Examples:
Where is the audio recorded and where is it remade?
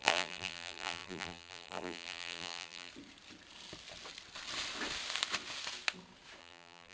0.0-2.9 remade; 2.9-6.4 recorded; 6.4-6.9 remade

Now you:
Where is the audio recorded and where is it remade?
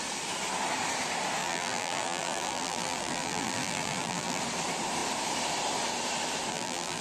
0.0-1.4 recorded; 1.4-4.4 remade; 4.4-6.5 recorded; 6.5-7.0 remade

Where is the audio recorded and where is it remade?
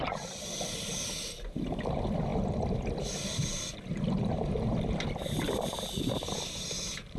0.0-7.2 remade